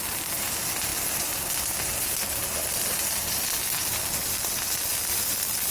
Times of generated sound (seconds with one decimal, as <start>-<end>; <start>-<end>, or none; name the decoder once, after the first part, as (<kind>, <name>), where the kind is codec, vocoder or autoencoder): none